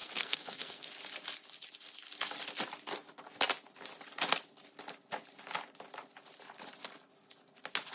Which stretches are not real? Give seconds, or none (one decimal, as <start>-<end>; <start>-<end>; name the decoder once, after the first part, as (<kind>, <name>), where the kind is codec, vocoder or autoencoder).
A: 0.0-0.9 (codec, SNAC)

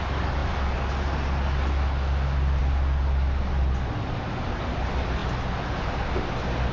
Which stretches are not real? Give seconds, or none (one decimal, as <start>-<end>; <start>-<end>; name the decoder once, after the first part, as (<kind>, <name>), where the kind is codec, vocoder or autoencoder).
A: none

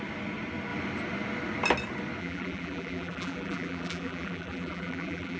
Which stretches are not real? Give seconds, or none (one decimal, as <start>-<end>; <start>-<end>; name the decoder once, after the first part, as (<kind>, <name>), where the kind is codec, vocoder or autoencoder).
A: 2.2-5.4 (vocoder, BigVGAN v2)

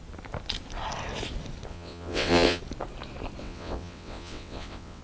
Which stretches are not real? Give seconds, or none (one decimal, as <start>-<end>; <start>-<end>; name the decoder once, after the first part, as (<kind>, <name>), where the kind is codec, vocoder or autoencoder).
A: 1.7-2.6 (vocoder, WaveNeXt); 3.4-5.0

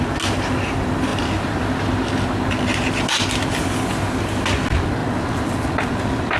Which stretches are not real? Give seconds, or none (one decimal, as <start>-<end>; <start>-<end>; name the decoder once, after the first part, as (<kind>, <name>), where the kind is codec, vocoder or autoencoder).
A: none

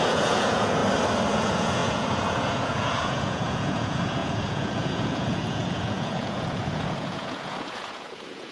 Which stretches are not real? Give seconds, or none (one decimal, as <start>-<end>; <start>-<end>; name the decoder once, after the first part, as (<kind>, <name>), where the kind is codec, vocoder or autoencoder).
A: 0.0-0.8 (vocoder, Vocos); 1.3-8.5